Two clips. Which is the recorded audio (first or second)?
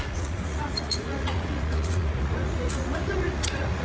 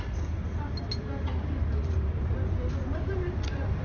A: second